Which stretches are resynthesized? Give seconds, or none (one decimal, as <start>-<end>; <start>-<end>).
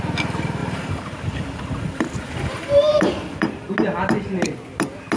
0.6-3.7